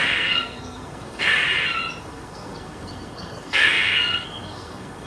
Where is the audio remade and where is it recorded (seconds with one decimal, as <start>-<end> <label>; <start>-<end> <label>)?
0.0-1.3 remade; 1.3-2.0 recorded; 2.0-5.1 remade